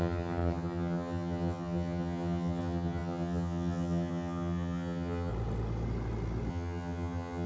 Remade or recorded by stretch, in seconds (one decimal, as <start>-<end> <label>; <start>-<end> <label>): 0.0-5.3 remade; 5.3-6.5 recorded; 6.5-7.5 remade